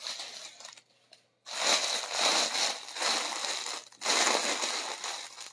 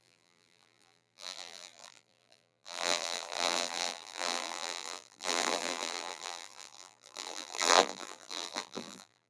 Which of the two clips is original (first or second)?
first